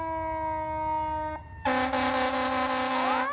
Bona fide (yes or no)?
yes